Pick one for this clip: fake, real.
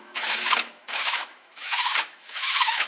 fake